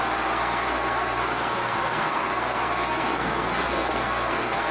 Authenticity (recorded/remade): remade